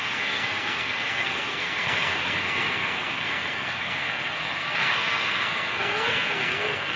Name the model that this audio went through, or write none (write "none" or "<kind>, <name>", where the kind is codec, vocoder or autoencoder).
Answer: codec, SNAC